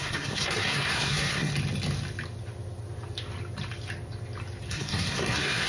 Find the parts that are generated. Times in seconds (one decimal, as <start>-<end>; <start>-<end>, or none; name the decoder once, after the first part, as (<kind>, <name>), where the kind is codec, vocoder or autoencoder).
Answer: 0.0-1.5 (codec, SNAC); 4.7-5.7